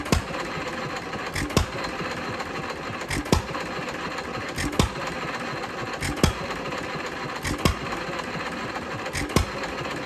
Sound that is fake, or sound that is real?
real